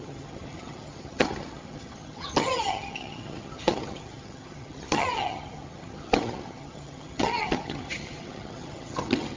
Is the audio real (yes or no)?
no